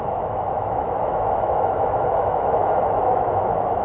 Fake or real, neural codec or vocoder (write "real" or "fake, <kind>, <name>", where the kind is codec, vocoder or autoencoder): fake, autoencoder, DAC-VAE